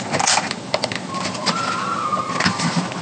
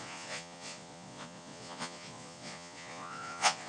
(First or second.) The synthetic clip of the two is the second